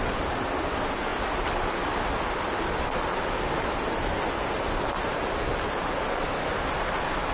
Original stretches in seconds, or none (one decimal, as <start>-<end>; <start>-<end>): 0.0-7.3